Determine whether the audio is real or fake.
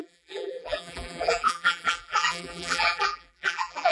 fake